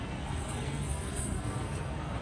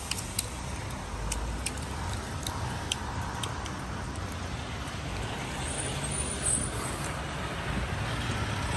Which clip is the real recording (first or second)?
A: second